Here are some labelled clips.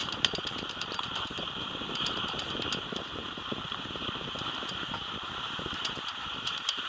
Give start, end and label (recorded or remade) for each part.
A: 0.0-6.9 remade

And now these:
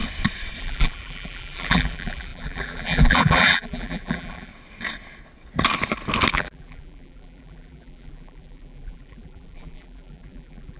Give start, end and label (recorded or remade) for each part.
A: 0.0-0.6 recorded; 0.6-4.5 remade; 4.5-6.3 recorded; 6.3-10.8 remade